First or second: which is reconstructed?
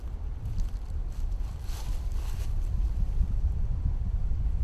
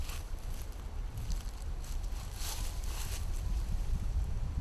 first